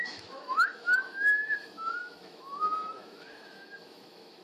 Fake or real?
fake